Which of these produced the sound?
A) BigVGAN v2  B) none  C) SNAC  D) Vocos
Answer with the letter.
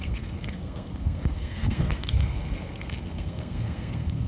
C